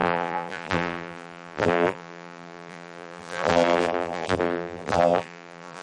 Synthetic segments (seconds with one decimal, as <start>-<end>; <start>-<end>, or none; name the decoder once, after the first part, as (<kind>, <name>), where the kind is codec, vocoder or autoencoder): 0.0-5.8 (vocoder, BigVGAN v2)